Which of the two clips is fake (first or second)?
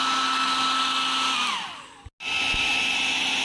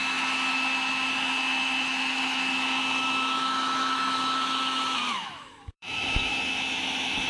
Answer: second